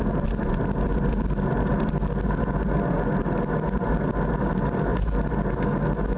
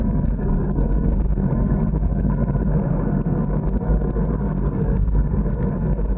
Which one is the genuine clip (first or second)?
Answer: first